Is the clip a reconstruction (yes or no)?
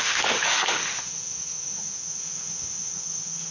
yes